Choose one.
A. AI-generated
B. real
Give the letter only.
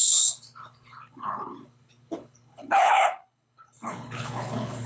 A